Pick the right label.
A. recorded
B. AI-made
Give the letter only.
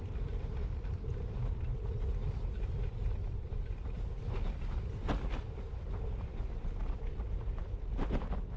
A